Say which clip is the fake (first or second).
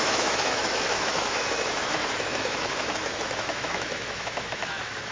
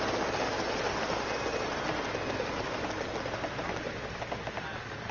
first